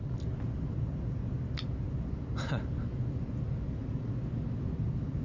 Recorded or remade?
recorded